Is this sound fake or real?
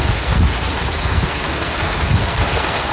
fake